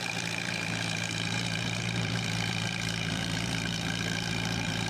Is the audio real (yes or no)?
no